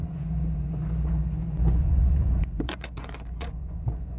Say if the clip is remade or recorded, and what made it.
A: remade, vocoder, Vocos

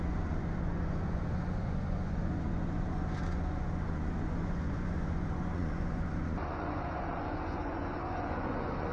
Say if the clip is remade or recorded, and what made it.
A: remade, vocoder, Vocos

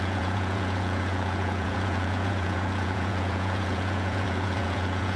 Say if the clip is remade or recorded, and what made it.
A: remade, vocoder, Vocos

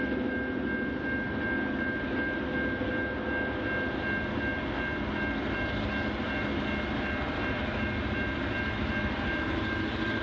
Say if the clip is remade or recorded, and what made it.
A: recorded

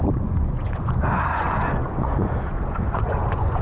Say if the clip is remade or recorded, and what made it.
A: remade, vocoder, Vocos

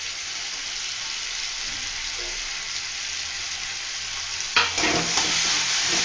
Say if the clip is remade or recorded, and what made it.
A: recorded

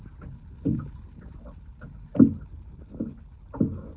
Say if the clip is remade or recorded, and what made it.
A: recorded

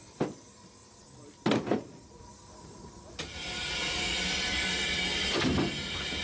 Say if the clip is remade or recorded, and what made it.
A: recorded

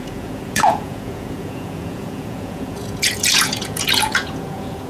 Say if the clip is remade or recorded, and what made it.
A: remade, vocoder, Vocos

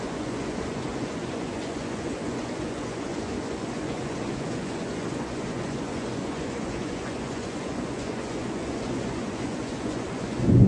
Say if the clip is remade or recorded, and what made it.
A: remade, vocoder, Vocos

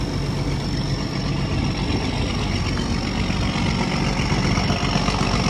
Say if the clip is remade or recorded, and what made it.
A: recorded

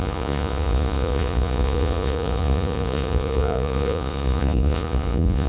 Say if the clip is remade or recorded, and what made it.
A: remade, vocoder, Vocos